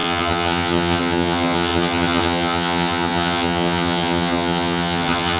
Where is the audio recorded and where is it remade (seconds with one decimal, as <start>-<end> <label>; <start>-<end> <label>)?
0.0-5.4 remade